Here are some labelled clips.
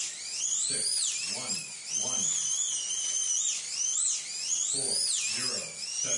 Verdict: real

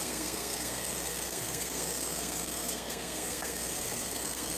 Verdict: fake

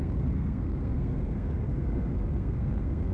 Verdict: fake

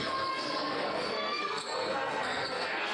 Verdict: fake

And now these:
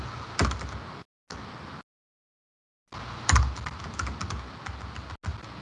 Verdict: real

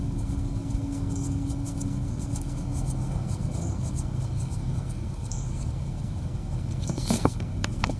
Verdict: fake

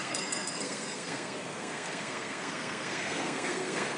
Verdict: fake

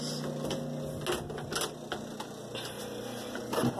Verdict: real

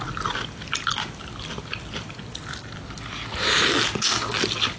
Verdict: real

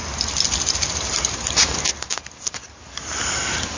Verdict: real